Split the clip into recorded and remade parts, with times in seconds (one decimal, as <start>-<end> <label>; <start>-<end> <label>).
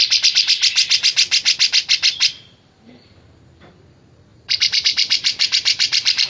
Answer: 0.0-4.3 recorded; 4.3-6.3 remade